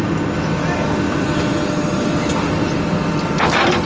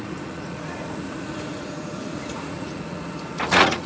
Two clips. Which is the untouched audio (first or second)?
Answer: first